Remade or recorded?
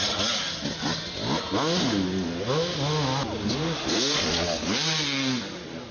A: recorded